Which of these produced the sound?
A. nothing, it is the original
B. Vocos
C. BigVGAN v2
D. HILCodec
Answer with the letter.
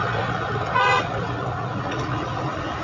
B